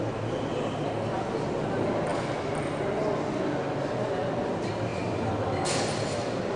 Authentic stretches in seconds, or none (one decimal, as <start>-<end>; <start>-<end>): 0.0-6.6